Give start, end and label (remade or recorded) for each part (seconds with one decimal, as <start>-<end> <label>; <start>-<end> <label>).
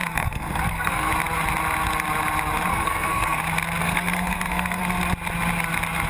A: 0.0-1.1 remade; 1.1-2.7 recorded; 2.7-3.4 remade; 3.4-3.8 recorded; 3.8-4.8 remade; 4.8-6.1 recorded